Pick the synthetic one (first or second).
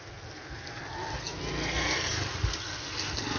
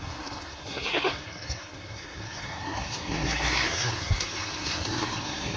second